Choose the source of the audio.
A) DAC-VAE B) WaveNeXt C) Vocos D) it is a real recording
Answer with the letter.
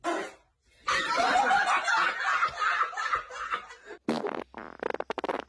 D